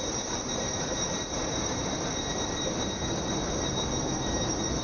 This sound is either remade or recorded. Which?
remade